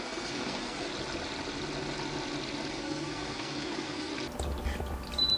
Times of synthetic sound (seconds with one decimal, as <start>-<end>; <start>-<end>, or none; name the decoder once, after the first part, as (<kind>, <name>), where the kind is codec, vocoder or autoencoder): 0.0-0.9 (codec, SNAC); 2.7-4.1